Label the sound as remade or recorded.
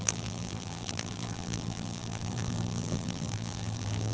remade